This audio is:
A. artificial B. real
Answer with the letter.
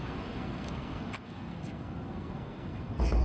A